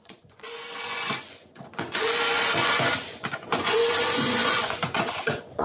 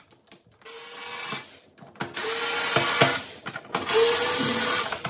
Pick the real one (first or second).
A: second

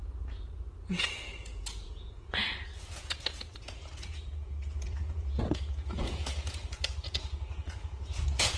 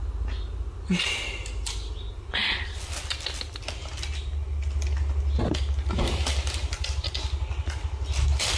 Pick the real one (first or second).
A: second